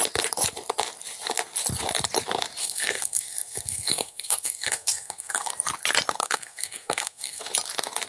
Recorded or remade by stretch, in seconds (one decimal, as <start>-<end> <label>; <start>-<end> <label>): 0.0-2.6 recorded; 2.6-5.5 remade; 5.5-6.2 recorded; 6.2-7.4 remade; 7.4-8.1 recorded